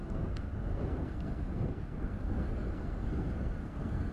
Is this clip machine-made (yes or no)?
yes